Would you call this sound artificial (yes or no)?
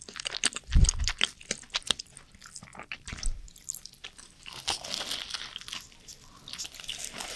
no